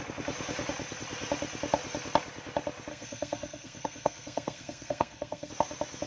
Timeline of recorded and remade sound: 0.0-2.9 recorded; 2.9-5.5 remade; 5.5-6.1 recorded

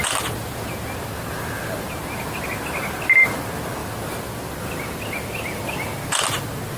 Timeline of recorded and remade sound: 0.0-6.8 recorded